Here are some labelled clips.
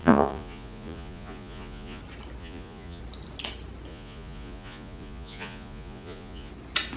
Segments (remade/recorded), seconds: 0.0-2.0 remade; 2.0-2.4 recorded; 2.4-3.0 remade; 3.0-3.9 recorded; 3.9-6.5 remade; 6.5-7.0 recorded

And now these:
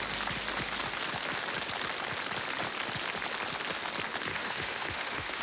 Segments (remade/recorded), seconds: 0.0-4.3 recorded; 4.3-5.4 remade

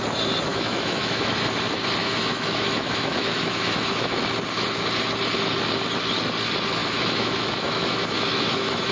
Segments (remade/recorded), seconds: 0.0-0.5 recorded; 0.5-1.3 remade; 1.3-2.0 recorded; 2.0-4.2 remade; 4.2-6.8 recorded; 6.8-8.9 remade

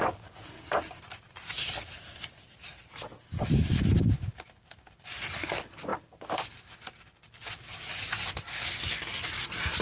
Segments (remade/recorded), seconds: 0.0-9.8 recorded